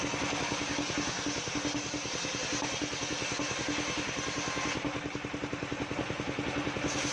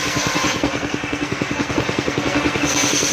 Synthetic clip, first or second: second